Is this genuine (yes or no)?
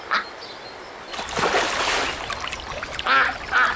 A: yes